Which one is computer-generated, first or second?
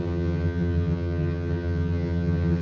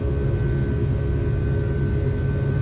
first